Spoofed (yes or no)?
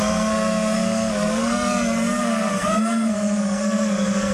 yes